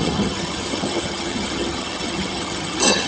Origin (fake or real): fake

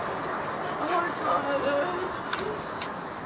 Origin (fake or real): real